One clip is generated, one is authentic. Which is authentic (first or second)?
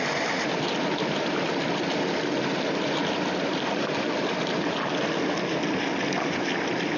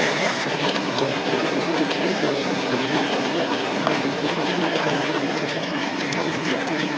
first